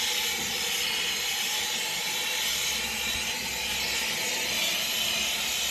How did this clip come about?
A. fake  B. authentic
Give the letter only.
B